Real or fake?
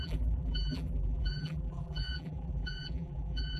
fake